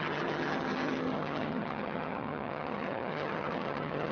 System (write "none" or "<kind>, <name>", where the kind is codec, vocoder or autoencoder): vocoder, HiFi-GAN